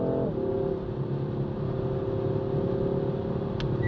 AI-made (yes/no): no